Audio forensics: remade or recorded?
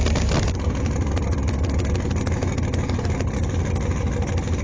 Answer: recorded